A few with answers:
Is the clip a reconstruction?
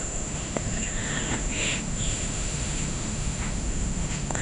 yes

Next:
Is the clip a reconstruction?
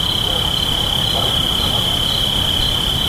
no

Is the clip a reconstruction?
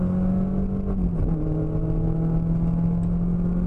no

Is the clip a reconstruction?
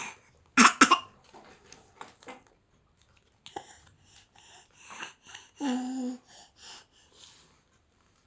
no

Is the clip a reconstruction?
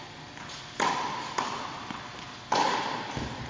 no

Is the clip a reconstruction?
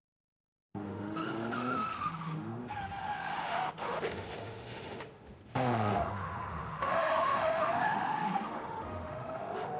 yes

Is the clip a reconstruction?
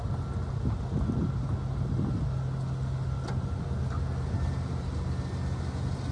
no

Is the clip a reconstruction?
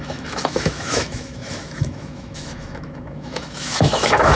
yes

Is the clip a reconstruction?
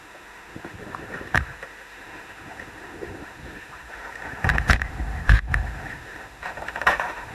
yes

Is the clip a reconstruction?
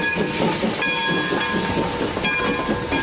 no